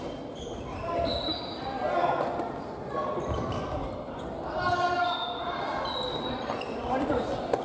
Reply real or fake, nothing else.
real